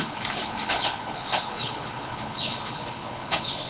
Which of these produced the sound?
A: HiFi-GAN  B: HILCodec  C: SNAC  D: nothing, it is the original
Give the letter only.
B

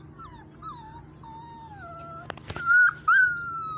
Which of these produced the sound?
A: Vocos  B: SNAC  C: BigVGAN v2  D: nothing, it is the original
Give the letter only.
D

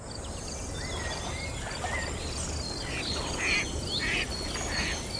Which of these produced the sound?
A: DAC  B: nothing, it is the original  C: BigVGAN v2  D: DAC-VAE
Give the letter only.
B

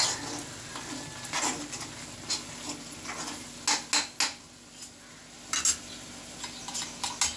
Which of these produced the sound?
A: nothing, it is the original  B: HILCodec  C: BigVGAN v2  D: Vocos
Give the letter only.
A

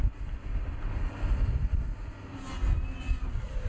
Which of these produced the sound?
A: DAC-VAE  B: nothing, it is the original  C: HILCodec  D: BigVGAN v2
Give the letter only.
B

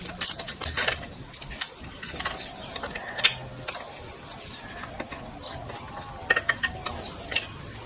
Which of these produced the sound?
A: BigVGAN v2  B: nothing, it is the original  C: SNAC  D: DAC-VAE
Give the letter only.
B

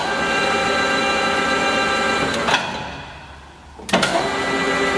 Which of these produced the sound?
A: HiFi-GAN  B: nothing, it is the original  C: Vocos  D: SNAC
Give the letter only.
B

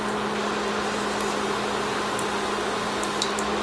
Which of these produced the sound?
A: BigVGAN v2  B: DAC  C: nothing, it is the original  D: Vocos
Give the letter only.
C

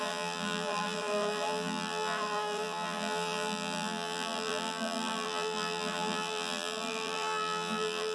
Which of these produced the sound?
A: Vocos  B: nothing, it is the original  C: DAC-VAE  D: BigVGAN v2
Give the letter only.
D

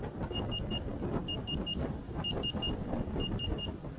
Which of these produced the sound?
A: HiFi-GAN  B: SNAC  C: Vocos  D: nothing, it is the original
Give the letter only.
D